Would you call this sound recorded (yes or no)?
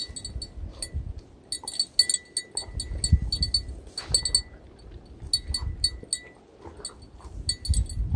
yes